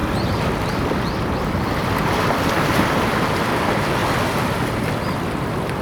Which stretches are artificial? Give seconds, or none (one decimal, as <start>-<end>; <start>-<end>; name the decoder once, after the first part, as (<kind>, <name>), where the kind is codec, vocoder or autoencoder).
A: 4.0-4.9 (vocoder, BigVGAN v2)